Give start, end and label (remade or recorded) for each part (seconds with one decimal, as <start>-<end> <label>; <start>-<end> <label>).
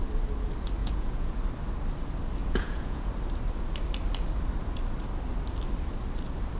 0.0-0.8 recorded; 0.8-1.4 remade; 1.4-2.4 recorded; 2.4-3.1 remade; 3.1-6.6 recorded